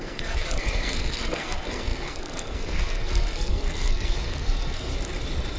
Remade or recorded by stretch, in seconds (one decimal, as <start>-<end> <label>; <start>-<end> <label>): 0.0-4.9 remade; 4.9-5.6 recorded